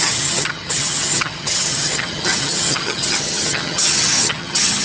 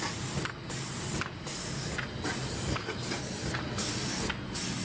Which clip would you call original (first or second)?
second